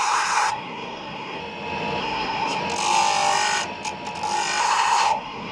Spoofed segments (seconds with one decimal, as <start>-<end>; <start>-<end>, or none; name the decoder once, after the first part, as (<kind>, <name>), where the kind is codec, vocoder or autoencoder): 0.0-1.4 (codec, SNAC); 2.0-2.6; 4.6-5.5